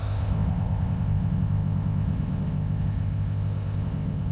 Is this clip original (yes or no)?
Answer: no